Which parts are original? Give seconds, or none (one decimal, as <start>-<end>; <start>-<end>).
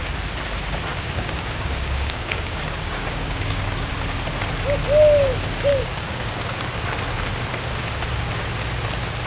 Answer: 0.0-0.9; 3.9-5.7; 6.8-9.3